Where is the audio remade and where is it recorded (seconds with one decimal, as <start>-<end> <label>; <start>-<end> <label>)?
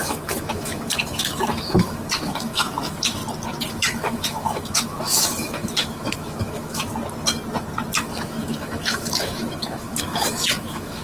0.0-3.2 remade; 3.2-3.7 recorded; 3.7-6.9 remade; 6.9-8.0 recorded; 8.0-11.0 remade